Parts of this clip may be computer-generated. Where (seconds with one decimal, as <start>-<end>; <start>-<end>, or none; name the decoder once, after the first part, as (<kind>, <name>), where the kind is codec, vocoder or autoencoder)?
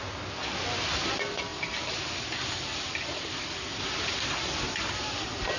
none